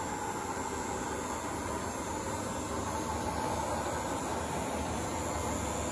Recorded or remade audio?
recorded